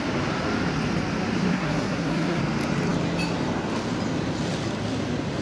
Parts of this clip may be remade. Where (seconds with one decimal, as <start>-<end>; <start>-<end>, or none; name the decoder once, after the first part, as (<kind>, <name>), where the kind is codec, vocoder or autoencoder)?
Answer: 1.5-2.4 (codec, SNAC)